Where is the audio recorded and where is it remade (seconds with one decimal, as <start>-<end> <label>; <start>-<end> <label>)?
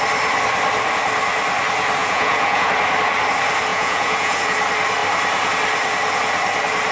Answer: 0.0-2.0 recorded; 2.0-2.7 remade; 2.7-3.7 recorded; 3.7-4.4 remade; 4.4-6.9 recorded